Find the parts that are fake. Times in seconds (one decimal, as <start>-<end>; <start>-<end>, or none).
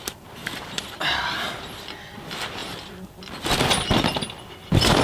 0.4-1.8